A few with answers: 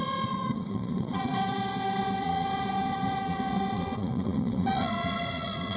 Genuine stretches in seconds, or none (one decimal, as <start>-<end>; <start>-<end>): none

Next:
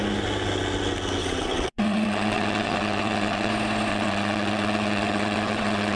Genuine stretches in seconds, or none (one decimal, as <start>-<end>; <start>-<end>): 0.0-1.2; 3.5-3.9

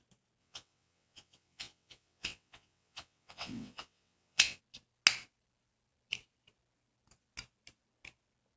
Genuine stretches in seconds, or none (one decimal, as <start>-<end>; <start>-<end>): 0.0-0.4; 4.6-8.6

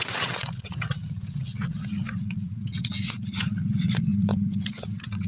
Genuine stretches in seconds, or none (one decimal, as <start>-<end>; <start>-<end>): none